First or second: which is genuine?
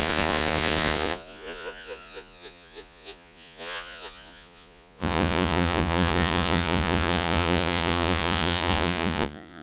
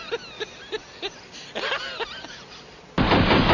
second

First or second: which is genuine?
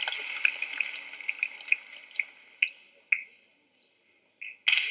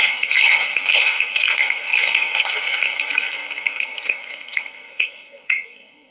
first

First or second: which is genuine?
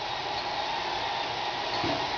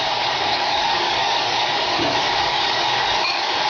first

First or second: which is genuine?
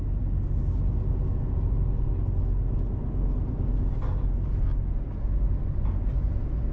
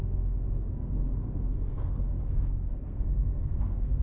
first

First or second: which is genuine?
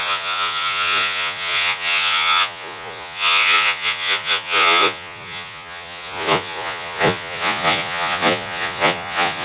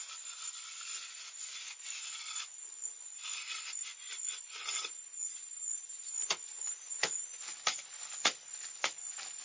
second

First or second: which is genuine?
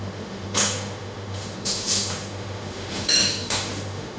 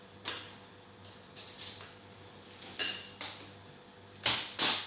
second